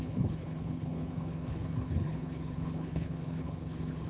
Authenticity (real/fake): fake